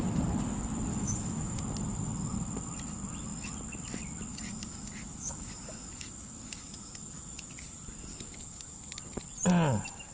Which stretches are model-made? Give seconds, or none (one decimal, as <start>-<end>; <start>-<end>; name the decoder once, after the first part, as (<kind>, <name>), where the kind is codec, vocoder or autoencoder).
0.9-1.6 (autoencoder, DAC-VAE); 4.3-7.5; 8.1-9.0